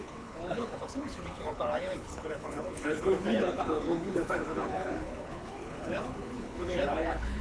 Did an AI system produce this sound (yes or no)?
yes